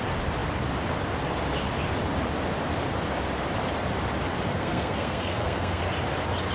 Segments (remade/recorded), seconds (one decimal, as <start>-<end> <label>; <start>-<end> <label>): 0.0-4.5 recorded; 4.5-5.8 remade; 5.8-6.5 recorded